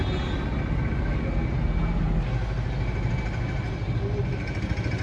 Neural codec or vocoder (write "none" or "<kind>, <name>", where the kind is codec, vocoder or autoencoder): none